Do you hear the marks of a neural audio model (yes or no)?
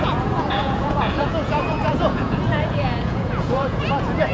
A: yes